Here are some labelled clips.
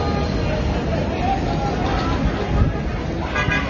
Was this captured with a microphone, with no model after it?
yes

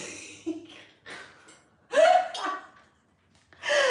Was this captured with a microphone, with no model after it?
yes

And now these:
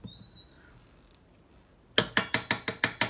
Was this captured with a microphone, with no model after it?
yes